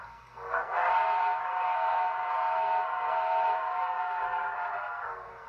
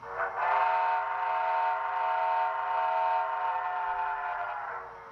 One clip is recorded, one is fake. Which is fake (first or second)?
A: first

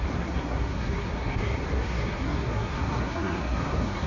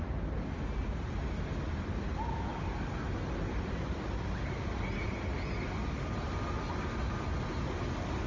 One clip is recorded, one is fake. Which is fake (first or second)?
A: first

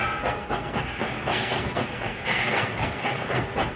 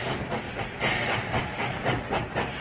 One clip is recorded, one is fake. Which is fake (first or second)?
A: first